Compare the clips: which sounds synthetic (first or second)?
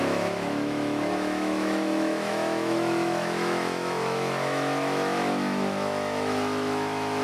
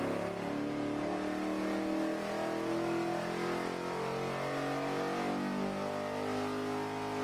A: first